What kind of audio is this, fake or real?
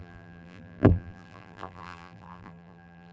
fake